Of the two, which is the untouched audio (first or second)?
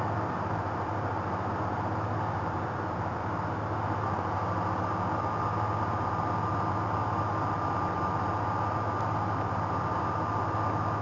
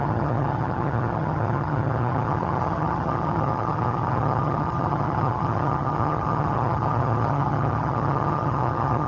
first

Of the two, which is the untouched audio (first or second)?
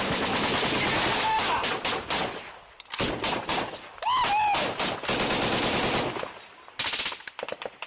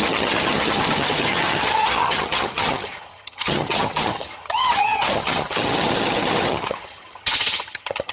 first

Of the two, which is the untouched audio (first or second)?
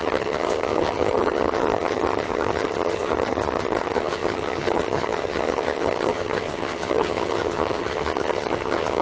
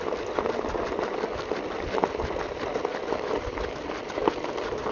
second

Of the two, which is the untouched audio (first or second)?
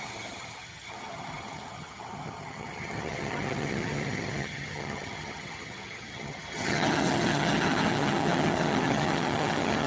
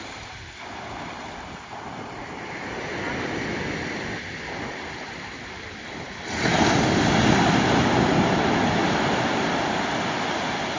second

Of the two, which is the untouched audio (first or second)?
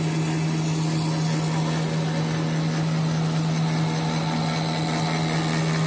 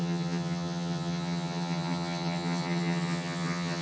first